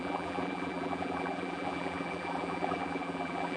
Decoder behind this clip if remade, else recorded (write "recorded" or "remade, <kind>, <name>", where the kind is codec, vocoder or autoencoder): remade, vocoder, BigVGAN v2